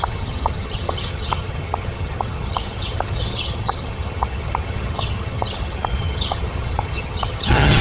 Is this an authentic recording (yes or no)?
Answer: no